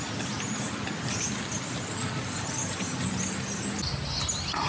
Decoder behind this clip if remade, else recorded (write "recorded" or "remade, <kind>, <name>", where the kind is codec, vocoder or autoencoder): recorded